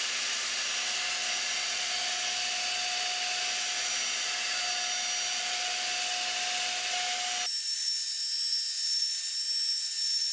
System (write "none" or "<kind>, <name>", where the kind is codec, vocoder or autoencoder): none